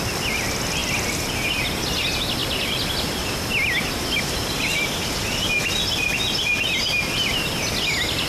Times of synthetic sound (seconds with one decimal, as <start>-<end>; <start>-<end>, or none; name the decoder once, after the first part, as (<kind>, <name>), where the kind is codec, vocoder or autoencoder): none